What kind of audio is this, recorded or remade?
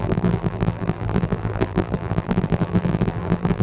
remade